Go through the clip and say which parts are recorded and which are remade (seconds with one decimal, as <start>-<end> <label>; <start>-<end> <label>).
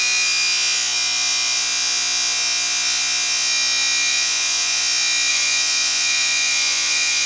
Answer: 0.0-4.1 recorded; 4.1-4.8 remade; 4.8-5.3 recorded; 5.3-7.3 remade